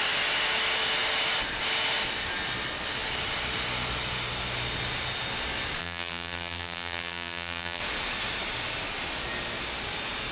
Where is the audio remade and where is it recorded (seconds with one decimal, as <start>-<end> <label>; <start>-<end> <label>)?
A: 0.0-5.8 recorded; 5.8-7.8 remade; 7.8-10.3 recorded